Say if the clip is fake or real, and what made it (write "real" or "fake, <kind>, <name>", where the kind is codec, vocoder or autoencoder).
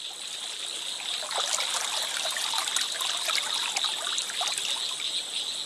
real